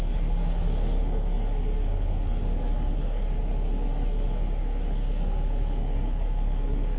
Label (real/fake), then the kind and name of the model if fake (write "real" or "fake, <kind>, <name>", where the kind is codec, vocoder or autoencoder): fake, codec, SNAC